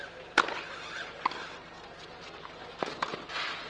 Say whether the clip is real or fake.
real